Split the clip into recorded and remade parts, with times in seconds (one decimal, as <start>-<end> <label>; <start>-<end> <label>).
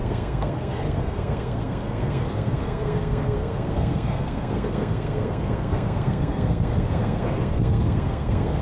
0.0-8.6 remade